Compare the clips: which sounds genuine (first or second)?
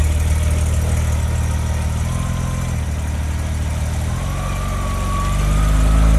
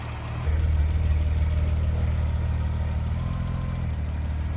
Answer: first